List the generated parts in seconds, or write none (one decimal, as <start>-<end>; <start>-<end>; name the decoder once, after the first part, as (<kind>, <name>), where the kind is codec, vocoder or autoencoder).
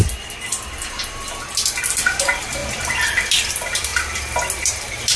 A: 0.0-2.6 (vocoder, BigVGAN v2); 3.1-3.9; 4.6-5.2